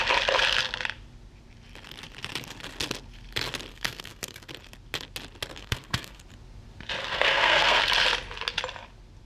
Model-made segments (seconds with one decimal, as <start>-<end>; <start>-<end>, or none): 3.7-4.5; 5.6-6.2; 7.0-7.8